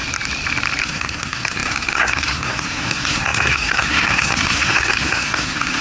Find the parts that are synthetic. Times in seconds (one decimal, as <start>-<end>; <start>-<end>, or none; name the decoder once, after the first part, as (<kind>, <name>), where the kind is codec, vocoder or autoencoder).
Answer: 0.8-5.8 (codec, SNAC)